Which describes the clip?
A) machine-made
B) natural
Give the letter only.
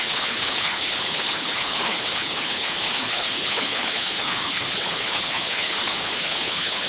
A